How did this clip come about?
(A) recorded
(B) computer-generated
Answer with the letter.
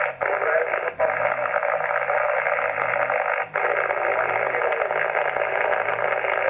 A